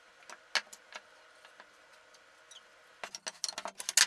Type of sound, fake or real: real